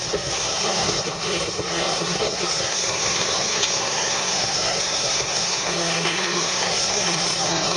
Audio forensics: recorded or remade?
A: remade